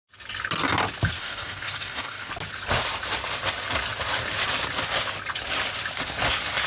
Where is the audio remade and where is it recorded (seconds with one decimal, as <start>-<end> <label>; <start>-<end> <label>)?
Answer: 0.0-1.2 recorded; 1.2-2.3 remade; 2.3-6.7 recorded